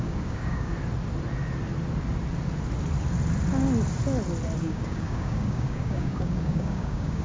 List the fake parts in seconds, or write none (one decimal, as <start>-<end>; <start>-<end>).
0.0-0.7; 4.6-7.2

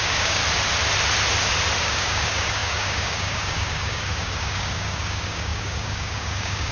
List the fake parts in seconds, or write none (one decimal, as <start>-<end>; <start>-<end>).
0.0-0.4; 1.8-6.7

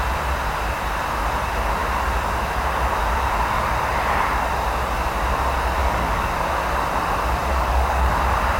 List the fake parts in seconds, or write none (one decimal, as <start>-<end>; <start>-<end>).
5.8-6.3; 7.5-8.1

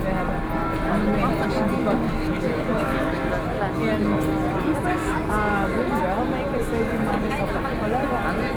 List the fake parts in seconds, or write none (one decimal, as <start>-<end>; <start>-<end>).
1.8-3.3; 5.0-6.0; 6.6-7.2

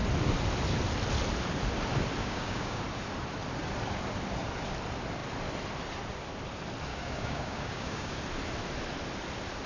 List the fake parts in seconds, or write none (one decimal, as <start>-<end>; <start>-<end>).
2.2-2.8; 6.9-8.2

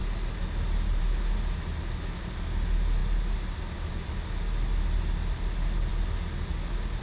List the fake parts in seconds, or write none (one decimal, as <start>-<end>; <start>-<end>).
none

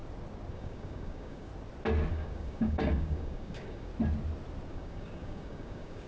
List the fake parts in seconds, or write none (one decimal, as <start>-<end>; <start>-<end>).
0.5-1.5; 2.1-3.9; 4.7-6.1